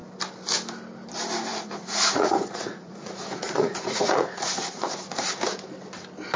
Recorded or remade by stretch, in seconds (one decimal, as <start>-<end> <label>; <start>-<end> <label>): 0.0-1.5 recorded; 1.5-5.3 remade; 5.3-6.4 recorded